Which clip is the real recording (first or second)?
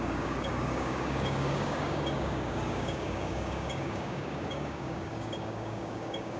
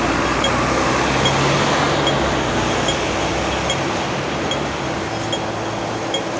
second